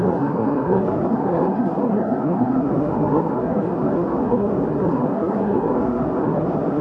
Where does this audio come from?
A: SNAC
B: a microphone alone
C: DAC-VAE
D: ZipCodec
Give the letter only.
A